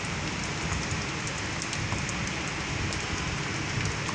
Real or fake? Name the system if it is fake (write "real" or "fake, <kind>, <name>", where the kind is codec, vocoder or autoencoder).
real